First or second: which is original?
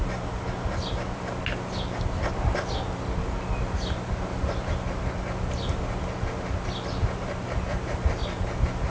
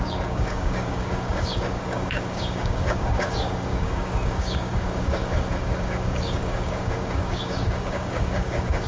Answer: first